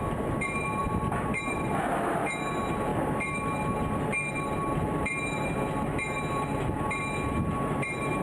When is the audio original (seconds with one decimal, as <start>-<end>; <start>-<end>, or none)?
none